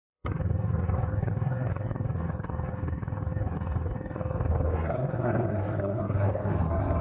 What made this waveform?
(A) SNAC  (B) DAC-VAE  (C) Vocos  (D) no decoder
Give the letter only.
A